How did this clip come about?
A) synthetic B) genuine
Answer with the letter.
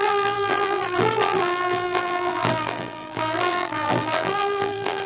A